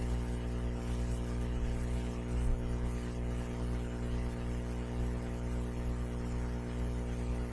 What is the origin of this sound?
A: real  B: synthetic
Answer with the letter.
A